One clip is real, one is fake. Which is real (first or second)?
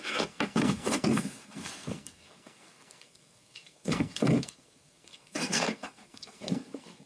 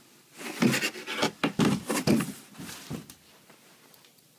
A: second